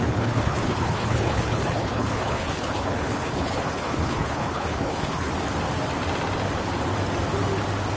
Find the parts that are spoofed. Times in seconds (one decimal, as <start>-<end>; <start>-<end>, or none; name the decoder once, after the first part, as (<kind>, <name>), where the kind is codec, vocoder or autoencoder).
0.0-5.3 (codec, HILCodec)